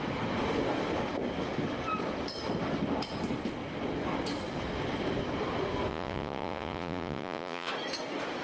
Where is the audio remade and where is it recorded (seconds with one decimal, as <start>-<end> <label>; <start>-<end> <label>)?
0.0-5.9 recorded; 5.9-7.7 remade; 7.7-8.4 recorded